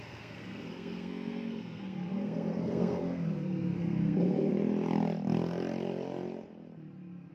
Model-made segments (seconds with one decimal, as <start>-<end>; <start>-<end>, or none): 0.0-4.5